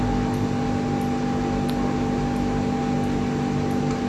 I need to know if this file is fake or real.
real